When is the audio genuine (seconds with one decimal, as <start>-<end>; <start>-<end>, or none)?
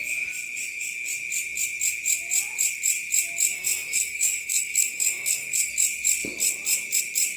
0.0-3.5; 5.7-7.4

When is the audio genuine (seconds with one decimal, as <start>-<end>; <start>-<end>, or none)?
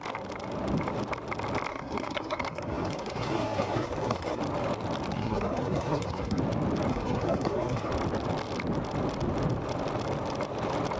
0.0-1.7; 4.4-5.1; 6.4-6.9; 7.9-11.0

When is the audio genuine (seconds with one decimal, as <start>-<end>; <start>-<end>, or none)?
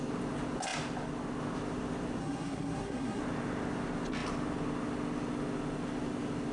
0.0-2.2; 3.2-6.5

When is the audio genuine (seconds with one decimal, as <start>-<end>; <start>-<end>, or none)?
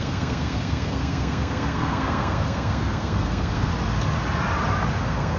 3.7-5.0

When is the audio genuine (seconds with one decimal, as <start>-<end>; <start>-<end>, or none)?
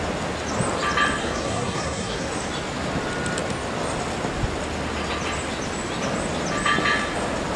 0.0-1.2; 2.3-7.6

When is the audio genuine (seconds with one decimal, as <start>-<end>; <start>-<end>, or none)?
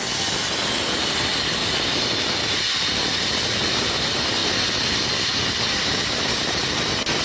0.0-7.2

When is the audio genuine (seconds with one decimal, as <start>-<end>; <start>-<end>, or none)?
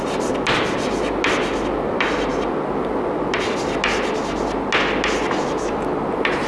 0.0-6.5